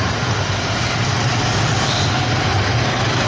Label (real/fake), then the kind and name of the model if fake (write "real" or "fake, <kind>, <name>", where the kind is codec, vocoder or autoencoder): real